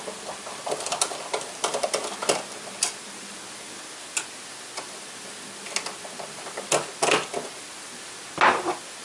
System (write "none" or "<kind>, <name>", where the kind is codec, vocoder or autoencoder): none